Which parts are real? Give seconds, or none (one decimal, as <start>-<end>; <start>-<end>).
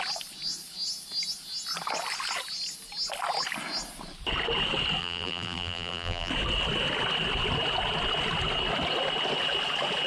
0.0-5.0; 6.3-10.1